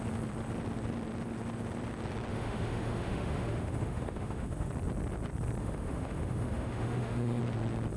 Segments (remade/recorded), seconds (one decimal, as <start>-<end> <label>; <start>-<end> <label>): 0.0-2.3 recorded; 2.3-4.7 remade; 4.7-5.6 recorded; 5.6-7.4 remade; 7.4-8.0 recorded